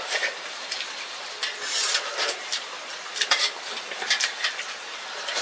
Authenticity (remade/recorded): remade